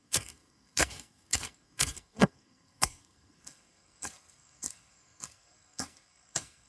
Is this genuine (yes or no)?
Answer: no